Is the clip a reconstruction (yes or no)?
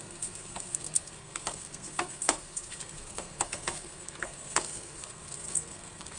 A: yes